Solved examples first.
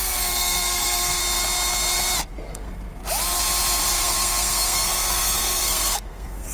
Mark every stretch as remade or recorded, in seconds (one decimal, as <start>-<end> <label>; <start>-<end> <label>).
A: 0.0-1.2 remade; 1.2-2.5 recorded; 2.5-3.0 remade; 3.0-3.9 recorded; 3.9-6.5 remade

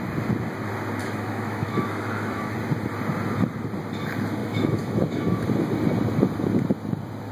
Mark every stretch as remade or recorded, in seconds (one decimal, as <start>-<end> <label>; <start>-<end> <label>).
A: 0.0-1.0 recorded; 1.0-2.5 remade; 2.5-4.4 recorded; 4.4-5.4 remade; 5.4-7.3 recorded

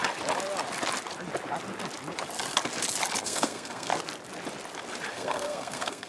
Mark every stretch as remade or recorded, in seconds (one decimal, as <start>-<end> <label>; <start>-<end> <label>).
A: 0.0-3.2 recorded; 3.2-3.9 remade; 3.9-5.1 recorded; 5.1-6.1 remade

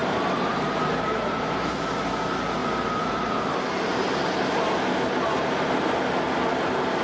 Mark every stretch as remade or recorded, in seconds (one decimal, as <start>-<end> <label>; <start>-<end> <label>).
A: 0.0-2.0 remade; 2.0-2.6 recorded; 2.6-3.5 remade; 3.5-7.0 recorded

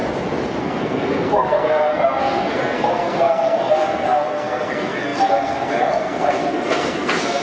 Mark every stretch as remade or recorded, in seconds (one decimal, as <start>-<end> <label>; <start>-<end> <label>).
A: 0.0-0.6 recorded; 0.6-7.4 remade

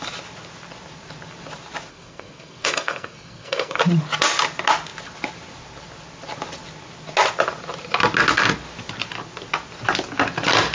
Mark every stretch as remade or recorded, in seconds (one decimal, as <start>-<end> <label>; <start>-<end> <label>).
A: 0.0-1.9 recorded; 1.9-3.8 remade; 3.8-10.7 recorded

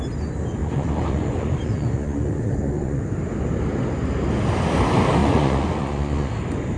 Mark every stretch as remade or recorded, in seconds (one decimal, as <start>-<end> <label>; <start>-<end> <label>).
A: 0.0-0.6 recorded; 0.6-3.0 remade; 3.0-5.2 recorded; 5.2-6.3 remade; 6.3-6.8 recorded